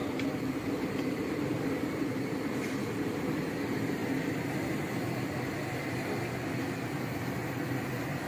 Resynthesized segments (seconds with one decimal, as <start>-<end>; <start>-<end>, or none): 0.0-3.5